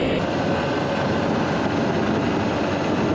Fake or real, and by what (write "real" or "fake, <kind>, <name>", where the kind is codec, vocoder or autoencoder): real